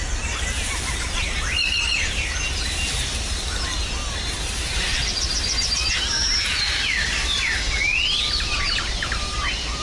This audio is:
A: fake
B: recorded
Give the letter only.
B